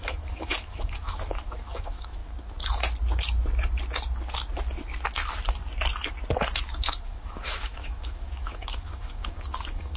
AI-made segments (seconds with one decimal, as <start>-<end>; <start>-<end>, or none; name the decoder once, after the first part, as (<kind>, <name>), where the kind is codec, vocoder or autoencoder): 0.0-2.2 (autoencoder, DAC-VAE); 6.6-10.0